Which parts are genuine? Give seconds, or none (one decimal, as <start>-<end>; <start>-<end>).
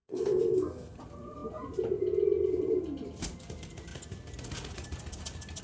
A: 1.0-5.6